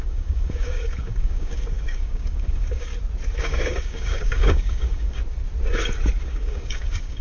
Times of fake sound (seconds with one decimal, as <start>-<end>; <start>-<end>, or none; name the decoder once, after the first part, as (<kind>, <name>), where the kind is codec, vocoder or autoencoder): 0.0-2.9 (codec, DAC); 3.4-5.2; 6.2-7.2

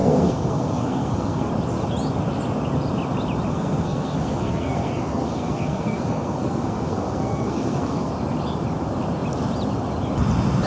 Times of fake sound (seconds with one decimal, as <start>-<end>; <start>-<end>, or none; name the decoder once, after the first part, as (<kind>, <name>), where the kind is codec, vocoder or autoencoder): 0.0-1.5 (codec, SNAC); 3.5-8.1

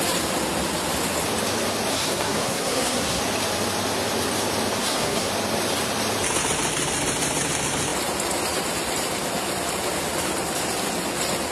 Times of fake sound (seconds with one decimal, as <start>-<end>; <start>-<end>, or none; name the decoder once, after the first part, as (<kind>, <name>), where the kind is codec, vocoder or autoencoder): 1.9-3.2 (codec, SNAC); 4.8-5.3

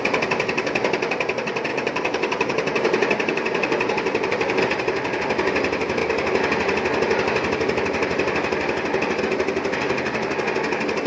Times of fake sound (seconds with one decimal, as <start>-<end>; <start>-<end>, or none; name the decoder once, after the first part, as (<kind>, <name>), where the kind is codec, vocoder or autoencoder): 1.7-4.6 (vocoder, BigVGAN v2)

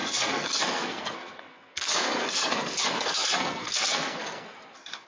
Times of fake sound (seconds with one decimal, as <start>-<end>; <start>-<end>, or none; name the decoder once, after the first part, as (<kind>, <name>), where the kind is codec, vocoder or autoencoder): 0.0-5.1 (codec, SNAC)

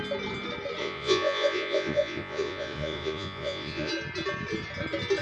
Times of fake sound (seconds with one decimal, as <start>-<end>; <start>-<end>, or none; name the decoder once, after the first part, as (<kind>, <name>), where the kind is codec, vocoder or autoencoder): 0.8-3.9 (vocoder, Vocos)

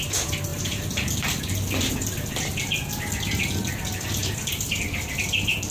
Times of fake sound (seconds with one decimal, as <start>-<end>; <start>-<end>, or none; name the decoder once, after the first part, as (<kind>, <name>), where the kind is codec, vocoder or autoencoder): 4.2-4.8 (vocoder, BigVGAN v2)

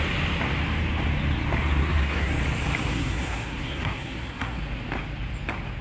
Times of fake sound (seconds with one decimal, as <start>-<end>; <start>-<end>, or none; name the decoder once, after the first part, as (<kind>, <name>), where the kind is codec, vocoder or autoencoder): 1.8-2.3 (codec, SNAC); 2.8-4.6